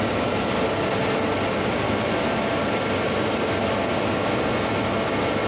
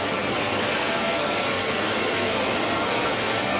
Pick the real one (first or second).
first